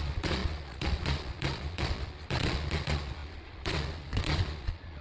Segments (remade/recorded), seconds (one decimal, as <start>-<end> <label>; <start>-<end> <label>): 0.0-5.0 remade